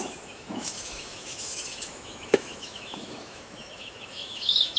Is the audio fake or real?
fake